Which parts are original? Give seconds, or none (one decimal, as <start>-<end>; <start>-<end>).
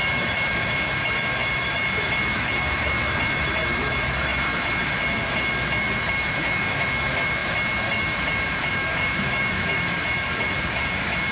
none